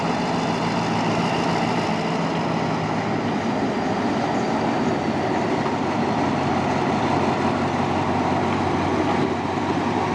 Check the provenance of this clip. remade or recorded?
recorded